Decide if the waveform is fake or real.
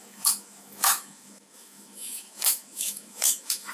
fake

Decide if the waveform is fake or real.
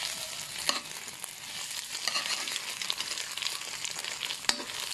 real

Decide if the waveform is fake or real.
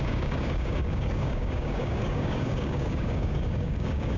fake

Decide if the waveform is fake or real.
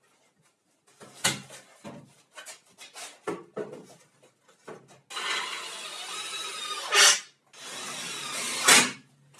real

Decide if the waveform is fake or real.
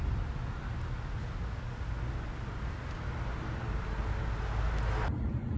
real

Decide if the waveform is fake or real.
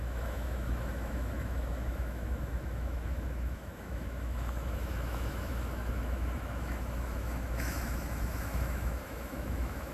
fake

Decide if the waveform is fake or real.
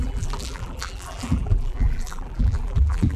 fake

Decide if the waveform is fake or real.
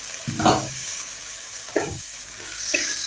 fake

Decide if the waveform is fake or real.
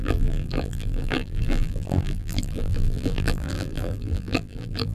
fake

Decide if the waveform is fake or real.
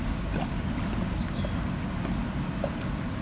real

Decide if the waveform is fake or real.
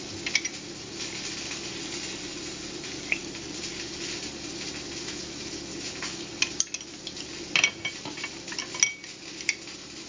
real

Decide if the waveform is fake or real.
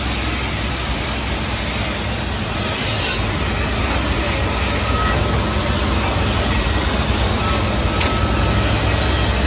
real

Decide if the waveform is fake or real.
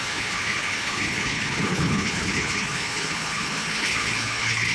fake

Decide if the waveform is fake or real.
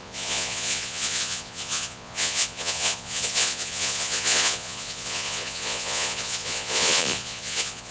fake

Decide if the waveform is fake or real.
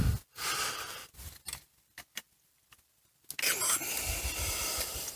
real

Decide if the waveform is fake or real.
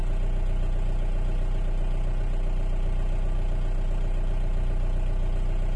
real